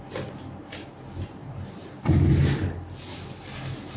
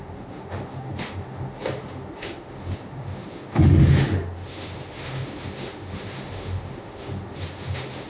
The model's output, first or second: second